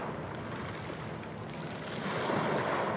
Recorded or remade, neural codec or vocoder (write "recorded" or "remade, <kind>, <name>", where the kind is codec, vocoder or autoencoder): recorded